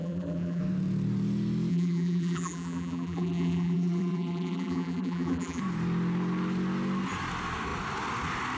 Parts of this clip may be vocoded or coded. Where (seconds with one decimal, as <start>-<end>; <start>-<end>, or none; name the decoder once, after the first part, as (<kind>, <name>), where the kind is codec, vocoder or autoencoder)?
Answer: 0.0-0.6 (vocoder, BigVGAN v2); 1.7-5.6